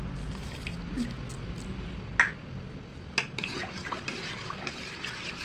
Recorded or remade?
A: recorded